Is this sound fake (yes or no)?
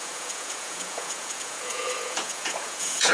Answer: yes